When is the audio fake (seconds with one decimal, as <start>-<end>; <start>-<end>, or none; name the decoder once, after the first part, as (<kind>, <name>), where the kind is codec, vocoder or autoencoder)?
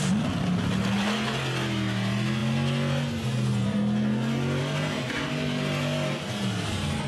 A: none